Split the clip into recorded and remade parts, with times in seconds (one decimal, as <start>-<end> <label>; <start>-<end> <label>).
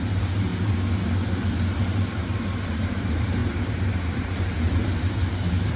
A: 0.0-0.5 remade; 0.5-1.8 recorded; 1.8-5.8 remade